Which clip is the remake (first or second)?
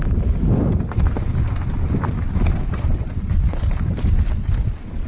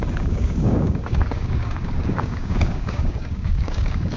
second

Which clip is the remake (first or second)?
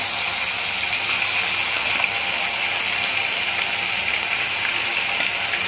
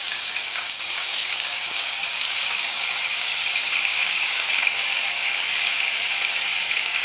second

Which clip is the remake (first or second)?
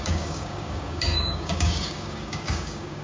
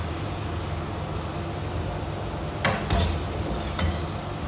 first